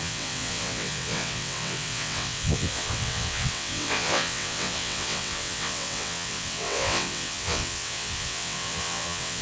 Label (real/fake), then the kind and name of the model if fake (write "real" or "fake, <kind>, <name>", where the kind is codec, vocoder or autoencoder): fake, vocoder, WaveNeXt